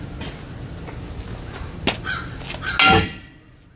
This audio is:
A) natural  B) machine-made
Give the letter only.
A